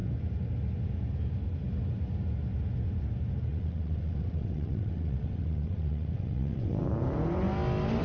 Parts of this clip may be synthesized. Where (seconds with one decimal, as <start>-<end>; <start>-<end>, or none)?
3.5-6.8